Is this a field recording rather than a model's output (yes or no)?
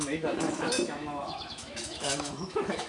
no